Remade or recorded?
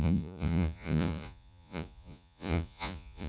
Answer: remade